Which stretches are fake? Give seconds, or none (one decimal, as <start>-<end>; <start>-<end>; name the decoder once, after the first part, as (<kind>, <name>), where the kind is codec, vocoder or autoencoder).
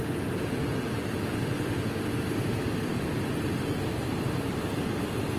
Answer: 4.0-4.6 (vocoder, BigVGAN v2)